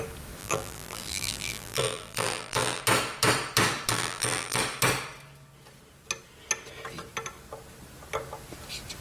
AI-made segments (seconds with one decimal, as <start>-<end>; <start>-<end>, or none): 0.4-2.8; 3.9-4.6